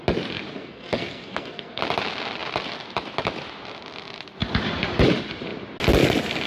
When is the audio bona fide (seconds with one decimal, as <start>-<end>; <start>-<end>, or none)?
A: 0.0-0.5; 1.8-6.5